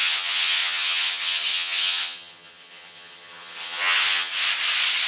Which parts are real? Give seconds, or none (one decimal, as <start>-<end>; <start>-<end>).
4.3-5.1